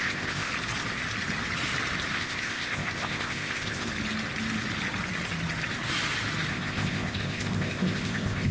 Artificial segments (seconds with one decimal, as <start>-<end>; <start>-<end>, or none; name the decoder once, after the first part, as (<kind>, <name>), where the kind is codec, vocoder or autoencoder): 0.0-0.5 (codec, ZipCodec); 2.1-3.9; 6.5-8.5